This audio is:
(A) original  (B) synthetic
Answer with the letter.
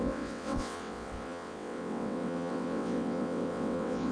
B